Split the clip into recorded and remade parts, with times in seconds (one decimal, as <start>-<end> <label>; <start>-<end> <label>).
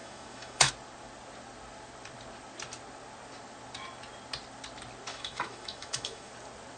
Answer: 0.0-0.7 remade; 0.7-5.1 recorded; 5.1-6.3 remade; 6.3-6.8 recorded